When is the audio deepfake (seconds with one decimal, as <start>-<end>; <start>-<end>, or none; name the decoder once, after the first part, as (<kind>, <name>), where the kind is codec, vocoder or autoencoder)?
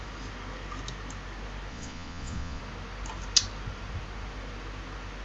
1.7-2.6 (vocoder, Vocos)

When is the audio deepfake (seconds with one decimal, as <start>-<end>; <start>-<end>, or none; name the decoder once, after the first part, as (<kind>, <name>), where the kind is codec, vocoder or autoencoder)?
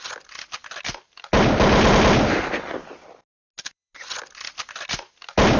none